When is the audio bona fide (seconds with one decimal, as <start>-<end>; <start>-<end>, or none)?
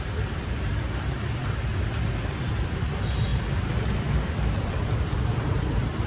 3.3-4.1